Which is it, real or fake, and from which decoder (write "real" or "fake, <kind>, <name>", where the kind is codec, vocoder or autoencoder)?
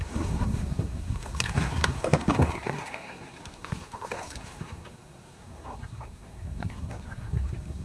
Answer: fake, codec, SNAC